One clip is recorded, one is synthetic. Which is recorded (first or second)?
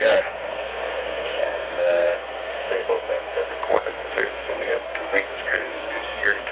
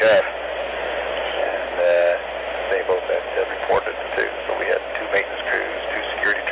second